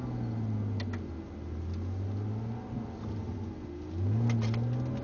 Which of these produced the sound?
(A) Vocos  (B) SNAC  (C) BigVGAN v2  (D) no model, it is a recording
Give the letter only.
D